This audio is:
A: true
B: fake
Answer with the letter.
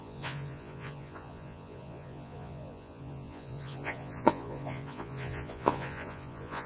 B